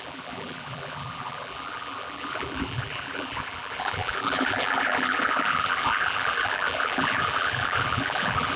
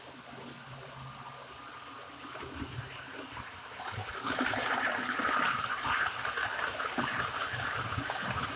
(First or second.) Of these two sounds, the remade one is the first